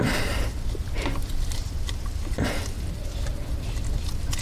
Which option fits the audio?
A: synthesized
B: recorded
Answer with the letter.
B